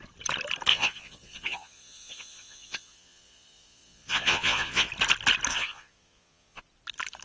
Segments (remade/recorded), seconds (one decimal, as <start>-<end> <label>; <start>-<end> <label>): 0.0-0.7 recorded; 0.7-4.9 remade; 4.9-5.5 recorded; 5.5-6.6 remade; 6.6-7.2 recorded